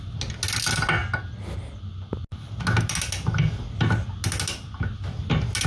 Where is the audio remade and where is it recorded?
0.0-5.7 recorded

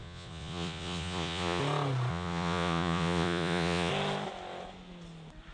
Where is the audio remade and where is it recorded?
0.0-1.6 remade; 1.6-2.1 recorded; 2.1-3.9 remade; 3.9-5.5 recorded

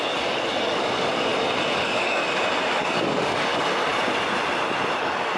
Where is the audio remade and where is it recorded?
0.0-1.3 remade; 1.3-1.8 recorded; 1.8-2.2 remade; 2.2-2.7 recorded; 2.7-3.9 remade; 3.9-5.0 recorded; 5.0-5.4 remade

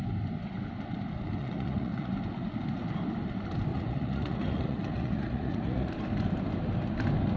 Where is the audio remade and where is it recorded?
0.0-1.4 recorded; 1.4-2.1 remade; 2.1-3.7 recorded; 3.7-5.9 remade; 5.9-7.4 recorded

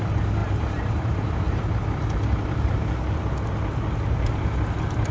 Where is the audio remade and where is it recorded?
0.0-0.4 recorded; 0.4-1.3 remade; 1.3-5.1 recorded

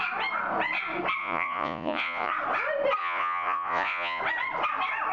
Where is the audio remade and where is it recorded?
0.0-1.2 recorded; 1.2-2.3 remade; 2.3-3.0 recorded; 3.0-4.2 remade; 4.2-5.1 recorded

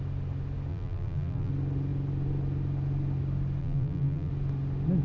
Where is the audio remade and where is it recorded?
0.0-0.7 recorded; 0.7-1.5 remade; 1.5-3.6 recorded; 3.6-4.3 remade; 4.3-5.0 recorded